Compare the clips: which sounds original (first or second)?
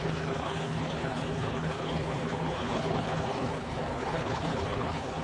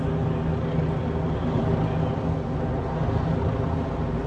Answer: second